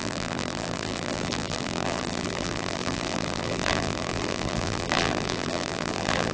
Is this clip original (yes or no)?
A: no